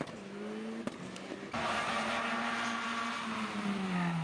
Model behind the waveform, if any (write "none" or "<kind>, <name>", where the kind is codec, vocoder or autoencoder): none